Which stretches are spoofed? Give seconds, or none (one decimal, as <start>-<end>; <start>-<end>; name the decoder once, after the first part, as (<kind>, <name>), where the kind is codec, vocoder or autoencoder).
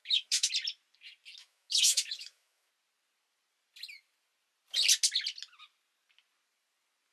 0.0-0.5 (autoencoder, DAC-VAE); 1.4-2.7